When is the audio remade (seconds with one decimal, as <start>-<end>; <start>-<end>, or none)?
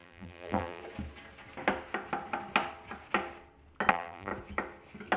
0.0-0.8; 3.9-4.3